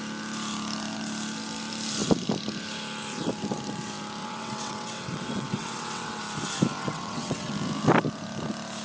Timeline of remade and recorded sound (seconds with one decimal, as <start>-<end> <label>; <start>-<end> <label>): 0.0-4.2 recorded; 4.2-6.2 remade; 6.2-6.8 recorded; 6.8-7.5 remade; 7.5-8.8 recorded